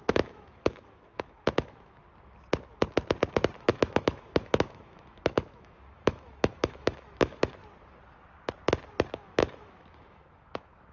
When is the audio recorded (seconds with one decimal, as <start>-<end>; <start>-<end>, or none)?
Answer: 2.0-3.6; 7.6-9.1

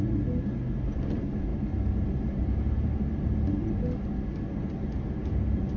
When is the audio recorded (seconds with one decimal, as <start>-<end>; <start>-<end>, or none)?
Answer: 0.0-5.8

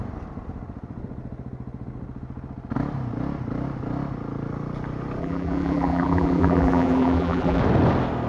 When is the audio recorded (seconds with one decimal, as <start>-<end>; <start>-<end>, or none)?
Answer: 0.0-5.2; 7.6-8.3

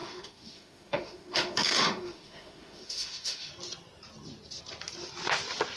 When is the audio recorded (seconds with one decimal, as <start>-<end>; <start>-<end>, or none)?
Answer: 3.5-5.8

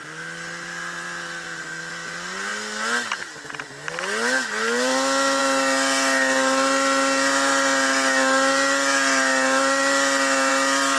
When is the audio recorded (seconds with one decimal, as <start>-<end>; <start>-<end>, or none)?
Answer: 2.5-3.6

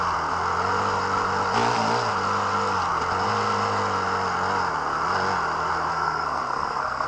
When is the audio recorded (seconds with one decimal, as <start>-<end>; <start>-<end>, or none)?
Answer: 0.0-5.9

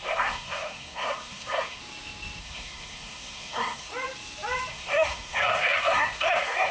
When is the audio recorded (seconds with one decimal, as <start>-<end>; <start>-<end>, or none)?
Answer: 1.8-2.4; 3.9-4.7

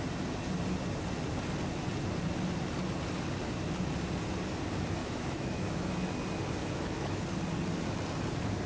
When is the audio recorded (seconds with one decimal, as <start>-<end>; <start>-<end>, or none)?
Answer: 0.0-5.0; 6.1-6.6; 7.2-8.7